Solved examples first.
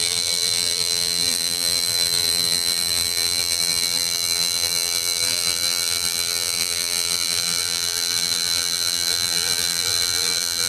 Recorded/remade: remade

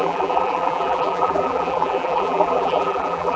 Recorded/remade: remade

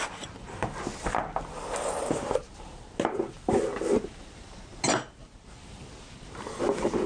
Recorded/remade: recorded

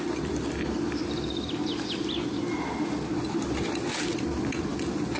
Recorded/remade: recorded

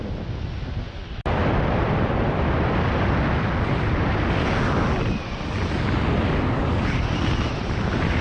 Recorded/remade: recorded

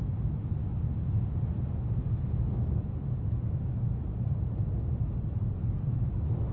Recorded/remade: recorded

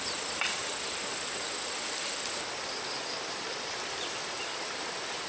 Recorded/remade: remade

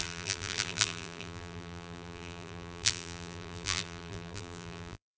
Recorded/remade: remade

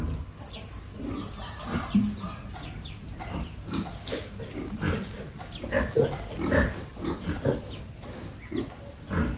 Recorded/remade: recorded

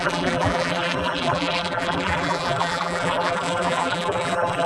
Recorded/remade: remade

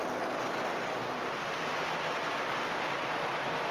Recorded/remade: recorded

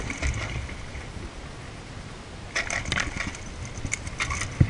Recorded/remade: recorded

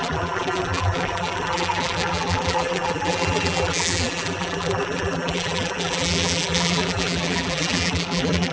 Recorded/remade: remade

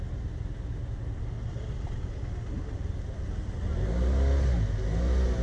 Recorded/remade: recorded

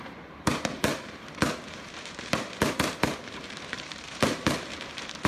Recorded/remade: remade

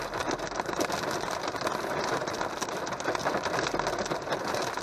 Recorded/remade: recorded